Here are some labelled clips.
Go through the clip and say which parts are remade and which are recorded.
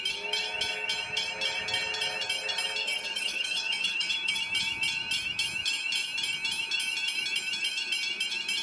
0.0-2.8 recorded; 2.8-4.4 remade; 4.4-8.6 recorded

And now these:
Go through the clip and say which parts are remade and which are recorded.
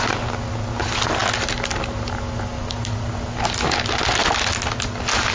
0.0-5.3 recorded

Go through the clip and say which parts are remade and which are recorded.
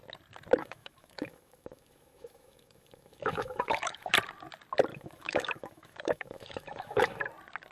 0.0-0.6 recorded; 0.6-4.1 remade; 4.1-4.9 recorded; 4.9-7.2 remade; 7.2-7.7 recorded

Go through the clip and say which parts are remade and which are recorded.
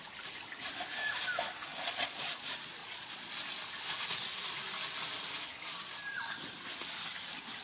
0.0-1.7 recorded; 1.7-2.3 remade; 2.3-2.8 recorded; 2.8-3.3 remade; 3.3-7.6 recorded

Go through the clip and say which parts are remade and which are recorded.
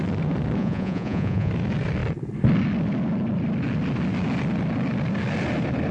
0.0-0.6 recorded; 0.6-1.5 remade; 1.5-5.9 recorded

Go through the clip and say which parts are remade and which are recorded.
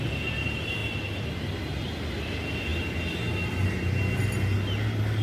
0.0-5.2 recorded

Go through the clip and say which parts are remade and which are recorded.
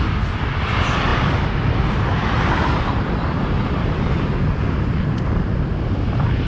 0.0-2.2 recorded; 2.2-4.2 remade; 4.2-6.5 recorded